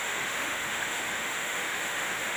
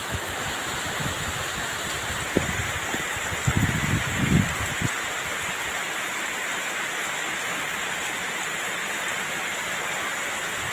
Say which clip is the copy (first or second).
first